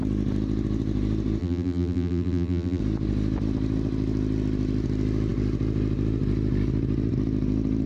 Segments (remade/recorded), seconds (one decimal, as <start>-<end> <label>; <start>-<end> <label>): 0.0-1.4 recorded; 1.4-2.8 remade; 2.8-7.9 recorded